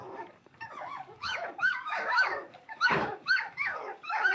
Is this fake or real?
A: fake